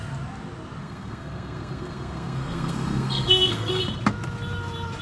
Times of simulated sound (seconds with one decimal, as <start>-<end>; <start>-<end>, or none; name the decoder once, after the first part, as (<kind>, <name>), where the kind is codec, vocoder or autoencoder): 0.8-3.8 (codec, SNAC)